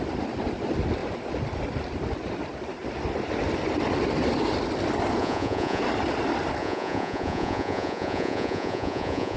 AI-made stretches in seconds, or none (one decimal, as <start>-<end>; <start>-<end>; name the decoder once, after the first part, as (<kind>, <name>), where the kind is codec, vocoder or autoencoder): 5.2-5.8 (vocoder, Vocos); 6.6-9.4